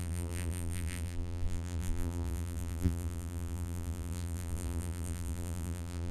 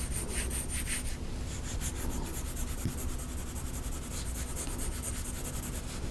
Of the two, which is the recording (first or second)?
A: second